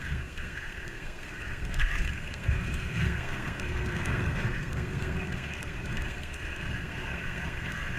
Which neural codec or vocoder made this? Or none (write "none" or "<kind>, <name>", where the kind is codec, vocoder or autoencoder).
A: codec, SNAC